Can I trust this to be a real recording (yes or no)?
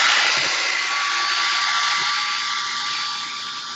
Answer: yes